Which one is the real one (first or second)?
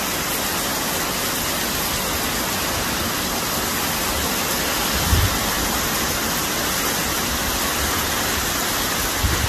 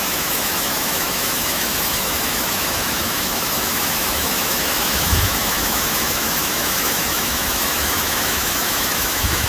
first